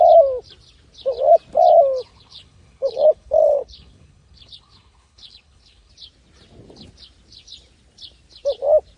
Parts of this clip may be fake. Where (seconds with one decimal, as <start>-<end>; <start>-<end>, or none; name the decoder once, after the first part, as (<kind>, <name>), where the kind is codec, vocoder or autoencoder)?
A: 2.1-5.9 (codec, HILCodec)